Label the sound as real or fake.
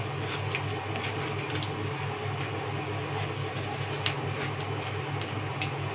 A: real